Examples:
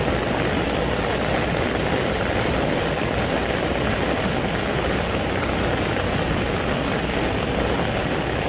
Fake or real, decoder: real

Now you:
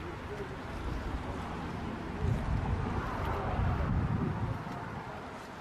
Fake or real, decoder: real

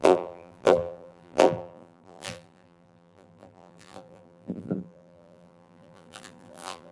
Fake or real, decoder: fake, vocoder, BigVGAN v2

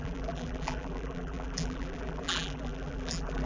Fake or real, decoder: fake, vocoder, BigVGAN v2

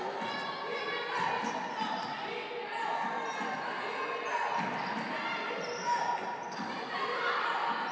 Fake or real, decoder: real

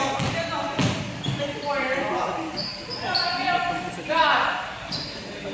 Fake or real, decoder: real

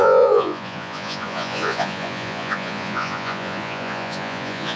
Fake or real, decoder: fake, vocoder, Vocos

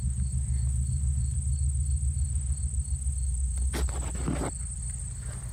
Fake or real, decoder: real